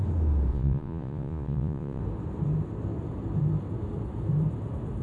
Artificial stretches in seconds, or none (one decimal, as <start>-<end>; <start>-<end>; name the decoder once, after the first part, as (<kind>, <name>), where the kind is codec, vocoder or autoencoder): 0.5-2.0 (vocoder, Vocos)